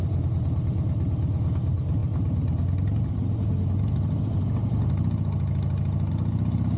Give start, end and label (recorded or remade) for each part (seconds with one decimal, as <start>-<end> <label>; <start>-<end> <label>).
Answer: 0.0-6.8 recorded